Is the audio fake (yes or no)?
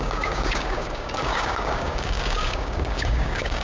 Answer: yes